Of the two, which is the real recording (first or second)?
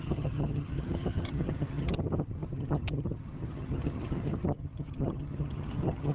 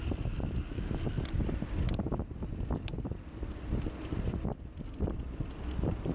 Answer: second